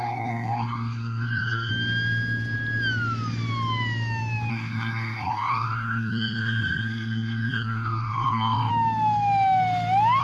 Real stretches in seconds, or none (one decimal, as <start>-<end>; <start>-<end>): 1.7-4.5; 8.7-10.2

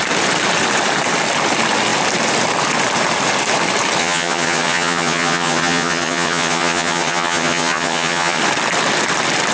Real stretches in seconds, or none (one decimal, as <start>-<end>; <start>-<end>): 0.0-4.0; 8.4-9.5

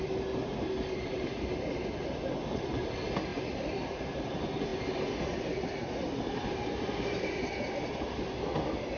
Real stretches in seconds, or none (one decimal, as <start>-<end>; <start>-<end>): 0.0-9.0

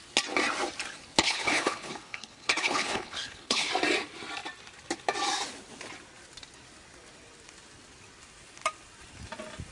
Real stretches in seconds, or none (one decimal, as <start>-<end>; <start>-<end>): 0.0-1.2; 3.7-9.7

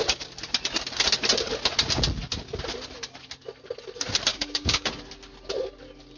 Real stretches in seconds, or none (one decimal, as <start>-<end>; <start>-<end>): 0.0-4.3; 4.9-6.2

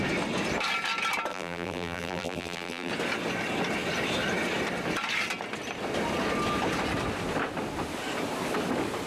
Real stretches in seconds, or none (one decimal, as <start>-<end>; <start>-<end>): 0.0-1.3; 2.9-9.1

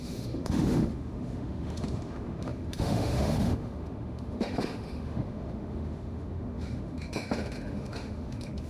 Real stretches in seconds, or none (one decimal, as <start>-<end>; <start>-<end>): none